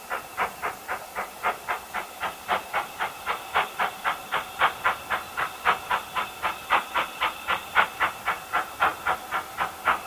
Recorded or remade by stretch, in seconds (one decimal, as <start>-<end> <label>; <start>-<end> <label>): 0.0-10.1 recorded